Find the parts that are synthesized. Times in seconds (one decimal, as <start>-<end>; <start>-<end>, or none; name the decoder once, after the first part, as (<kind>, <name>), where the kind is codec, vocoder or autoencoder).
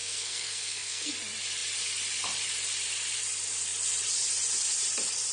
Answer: 0.0-1.1 (codec, SNAC)